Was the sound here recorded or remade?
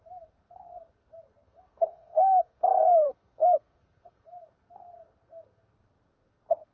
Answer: remade